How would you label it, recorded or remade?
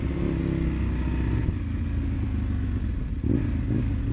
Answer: recorded